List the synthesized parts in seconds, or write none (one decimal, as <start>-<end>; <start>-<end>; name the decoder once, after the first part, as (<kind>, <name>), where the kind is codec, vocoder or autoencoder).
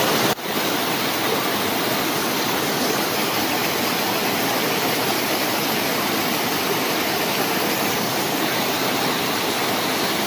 none